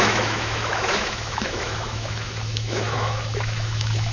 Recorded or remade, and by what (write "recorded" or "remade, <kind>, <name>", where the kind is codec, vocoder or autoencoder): remade, autoencoder, DAC-VAE